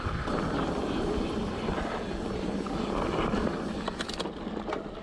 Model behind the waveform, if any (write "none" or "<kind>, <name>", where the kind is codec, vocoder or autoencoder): none